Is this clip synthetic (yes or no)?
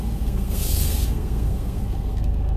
yes